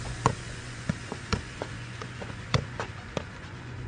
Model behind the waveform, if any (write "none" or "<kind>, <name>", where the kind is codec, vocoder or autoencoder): vocoder, Vocos